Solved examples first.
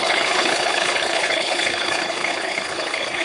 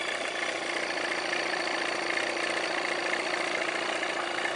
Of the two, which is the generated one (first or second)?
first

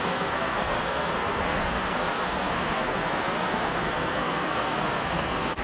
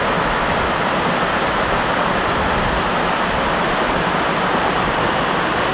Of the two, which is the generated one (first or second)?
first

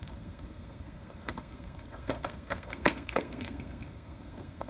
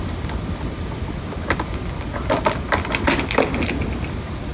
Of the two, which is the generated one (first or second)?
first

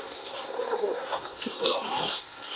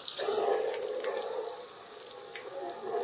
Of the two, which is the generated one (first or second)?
first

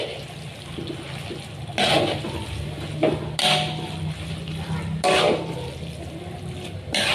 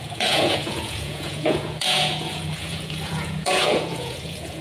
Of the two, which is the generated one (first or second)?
second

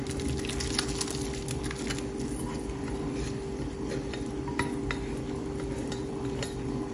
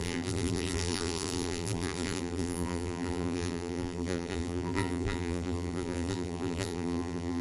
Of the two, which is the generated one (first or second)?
second